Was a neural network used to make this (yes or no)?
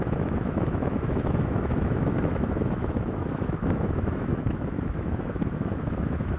yes